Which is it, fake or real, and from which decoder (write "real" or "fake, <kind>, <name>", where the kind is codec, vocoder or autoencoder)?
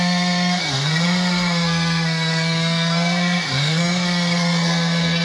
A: fake, codec, SNAC